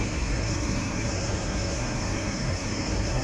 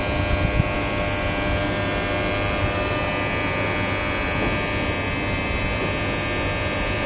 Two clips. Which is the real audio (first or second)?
second